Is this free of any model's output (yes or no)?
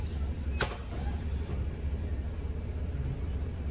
yes